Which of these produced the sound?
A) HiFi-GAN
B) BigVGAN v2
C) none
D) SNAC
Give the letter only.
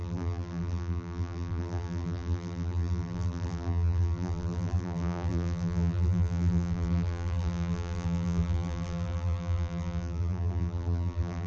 B